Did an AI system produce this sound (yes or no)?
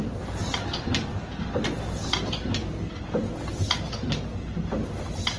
no